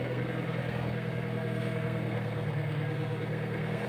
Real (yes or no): no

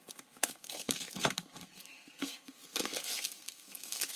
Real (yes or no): no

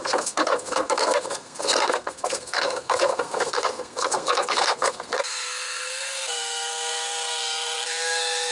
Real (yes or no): no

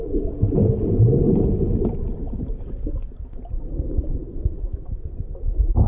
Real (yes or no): yes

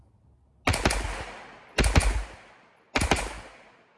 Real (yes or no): yes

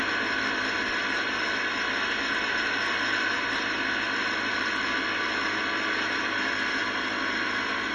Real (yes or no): yes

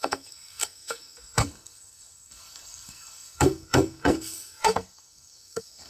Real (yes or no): no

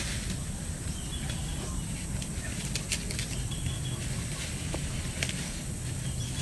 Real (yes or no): yes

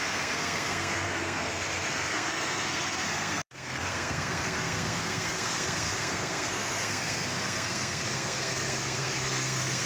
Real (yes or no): no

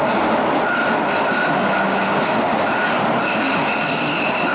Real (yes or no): yes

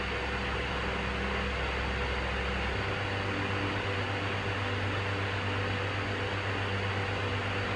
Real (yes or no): yes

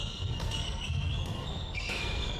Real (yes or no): no